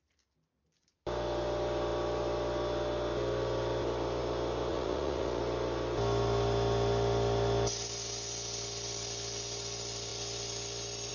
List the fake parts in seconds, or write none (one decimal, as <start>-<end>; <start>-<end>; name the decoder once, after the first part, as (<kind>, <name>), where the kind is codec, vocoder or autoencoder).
4.7-5.4 (vocoder, Vocos)